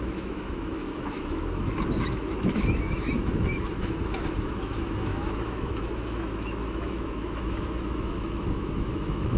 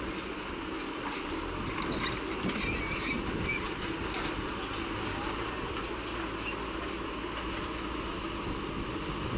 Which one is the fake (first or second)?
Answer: first